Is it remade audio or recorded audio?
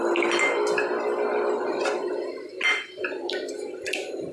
recorded